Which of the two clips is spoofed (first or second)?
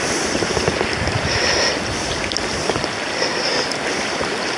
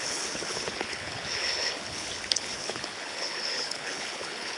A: second